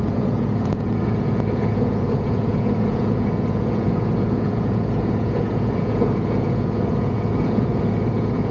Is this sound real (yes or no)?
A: no